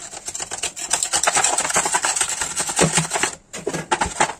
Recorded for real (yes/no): yes